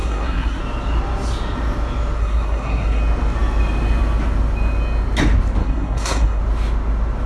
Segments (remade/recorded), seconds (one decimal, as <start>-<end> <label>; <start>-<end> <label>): 0.0-0.6 remade; 0.6-2.2 recorded; 2.2-3.0 remade; 3.0-5.6 recorded; 5.6-6.4 remade; 6.4-7.3 recorded